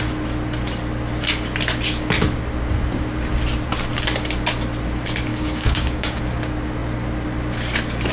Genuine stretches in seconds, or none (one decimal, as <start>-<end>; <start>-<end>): 0.0-5.3; 6.2-8.1